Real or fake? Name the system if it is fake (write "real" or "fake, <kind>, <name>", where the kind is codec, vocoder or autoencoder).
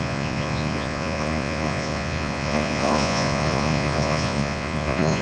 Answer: fake, vocoder, Vocos